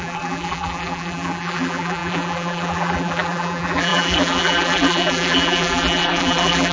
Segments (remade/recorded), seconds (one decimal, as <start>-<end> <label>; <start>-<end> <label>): 0.0-6.7 remade